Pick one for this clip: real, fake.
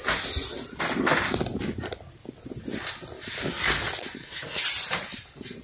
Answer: real